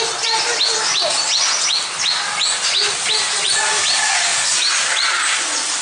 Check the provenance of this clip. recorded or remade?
recorded